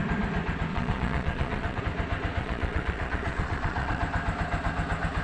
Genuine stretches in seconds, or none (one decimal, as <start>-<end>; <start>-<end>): 0.0-0.7; 1.8-2.4; 4.0-5.2